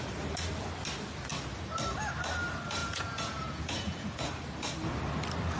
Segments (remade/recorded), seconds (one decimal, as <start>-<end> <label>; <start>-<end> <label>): 0.0-2.8 recorded; 2.8-4.3 remade; 4.3-5.6 recorded